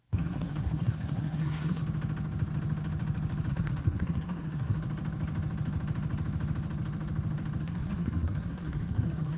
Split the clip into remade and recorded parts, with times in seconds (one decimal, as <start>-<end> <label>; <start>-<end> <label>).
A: 0.0-1.8 remade; 1.8-3.5 recorded; 3.5-4.8 remade; 4.8-7.6 recorded; 7.6-9.4 remade